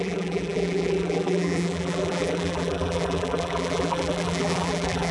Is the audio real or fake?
fake